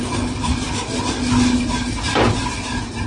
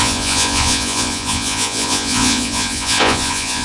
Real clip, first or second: first